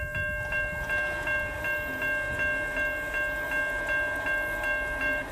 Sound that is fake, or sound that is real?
real